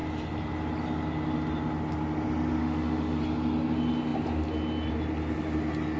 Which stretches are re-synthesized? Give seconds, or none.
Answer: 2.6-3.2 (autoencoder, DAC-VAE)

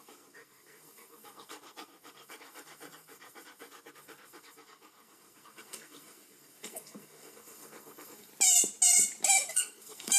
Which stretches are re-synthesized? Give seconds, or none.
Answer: 0.0-8.3 (codec, SNAC); 9.5-10.2

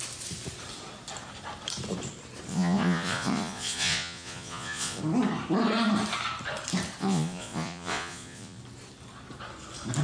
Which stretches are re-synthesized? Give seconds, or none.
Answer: 2.5-5.0 (vocoder, Vocos); 7.0-8.6

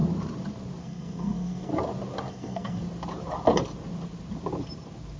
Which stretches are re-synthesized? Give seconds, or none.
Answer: 0.8-1.7 (codec, SNAC); 2.3-2.8

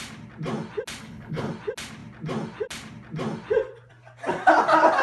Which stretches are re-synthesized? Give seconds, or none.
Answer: 1.0-1.5 (codec, HILCodec)